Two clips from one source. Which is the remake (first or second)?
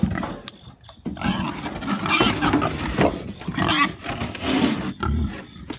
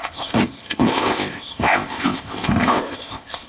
second